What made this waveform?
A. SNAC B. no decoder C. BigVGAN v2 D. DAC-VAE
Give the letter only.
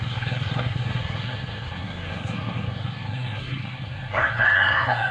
A